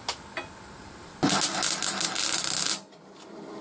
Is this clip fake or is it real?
real